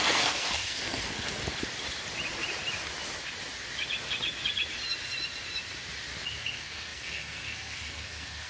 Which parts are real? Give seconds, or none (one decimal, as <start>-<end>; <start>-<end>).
1.4-6.4